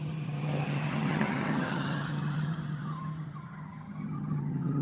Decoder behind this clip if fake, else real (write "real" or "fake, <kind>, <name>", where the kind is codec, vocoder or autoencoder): fake, vocoder, HiFi-GAN